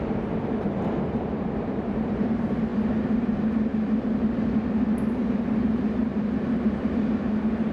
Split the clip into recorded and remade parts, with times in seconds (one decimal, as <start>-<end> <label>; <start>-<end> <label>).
0.0-2.7 remade; 2.7-5.4 recorded; 5.4-7.7 remade